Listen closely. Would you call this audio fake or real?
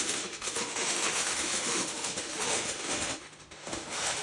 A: fake